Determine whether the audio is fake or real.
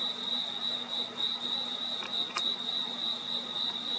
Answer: real